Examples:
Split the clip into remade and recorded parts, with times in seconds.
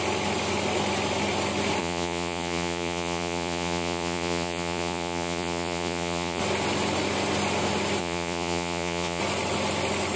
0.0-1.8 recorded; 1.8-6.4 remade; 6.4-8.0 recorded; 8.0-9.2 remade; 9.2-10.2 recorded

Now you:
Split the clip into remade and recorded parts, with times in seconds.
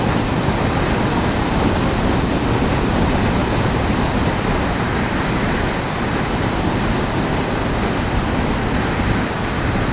0.0-3.4 recorded; 3.4-5.5 remade; 5.5-9.9 recorded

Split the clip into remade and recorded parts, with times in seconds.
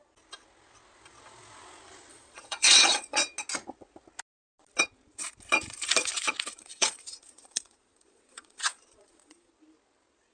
0.0-2.1 recorded; 2.1-3.2 remade; 3.2-6.5 recorded; 6.5-9.5 remade; 9.5-10.3 recorded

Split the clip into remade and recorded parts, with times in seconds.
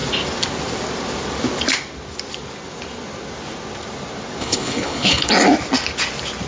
0.0-4.4 recorded; 4.4-5.3 remade; 5.3-6.5 recorded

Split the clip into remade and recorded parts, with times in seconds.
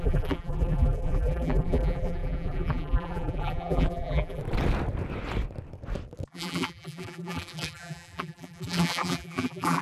0.0-4.4 remade; 4.4-6.3 recorded; 6.3-9.8 remade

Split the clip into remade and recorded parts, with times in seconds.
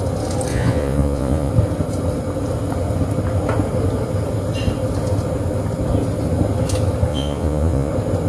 0.0-0.5 recorded; 0.5-1.5 remade; 1.5-7.1 recorded; 7.1-7.9 remade; 7.9-8.3 recorded